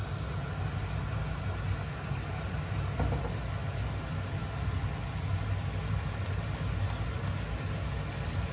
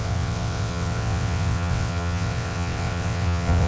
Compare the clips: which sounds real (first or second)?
first